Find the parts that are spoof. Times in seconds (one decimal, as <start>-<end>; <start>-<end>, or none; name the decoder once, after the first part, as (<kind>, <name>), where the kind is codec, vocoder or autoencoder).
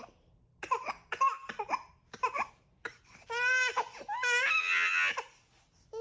4.6-5.1 (vocoder, HiFi-GAN)